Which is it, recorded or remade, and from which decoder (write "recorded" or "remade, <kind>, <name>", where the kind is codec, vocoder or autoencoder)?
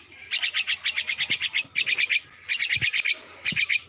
recorded